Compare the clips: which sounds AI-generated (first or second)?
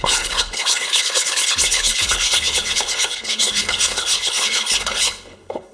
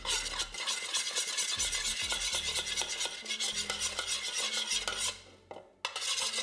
first